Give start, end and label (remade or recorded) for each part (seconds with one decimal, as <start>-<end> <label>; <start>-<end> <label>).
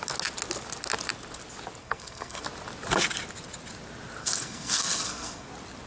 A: 0.0-1.8 recorded; 1.8-2.4 remade; 2.4-4.2 recorded; 4.2-5.5 remade; 5.5-5.9 recorded